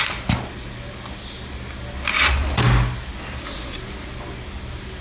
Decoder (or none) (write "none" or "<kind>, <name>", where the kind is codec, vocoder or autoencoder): none